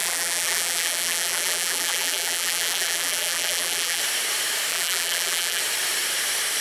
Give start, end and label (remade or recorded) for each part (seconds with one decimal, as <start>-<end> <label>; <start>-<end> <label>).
0.0-4.0 remade; 4.0-4.7 recorded; 4.7-5.6 remade; 5.6-6.6 recorded